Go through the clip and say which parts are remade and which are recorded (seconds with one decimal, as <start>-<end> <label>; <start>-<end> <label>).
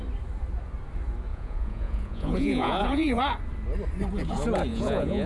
0.0-1.3 recorded; 1.3-3.2 remade; 3.2-4.7 recorded; 4.7-5.3 remade